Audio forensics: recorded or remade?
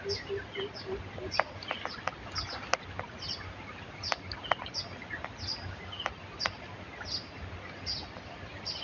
recorded